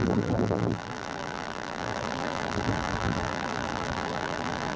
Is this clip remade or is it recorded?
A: remade